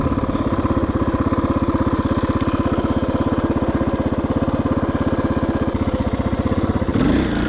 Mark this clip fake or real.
real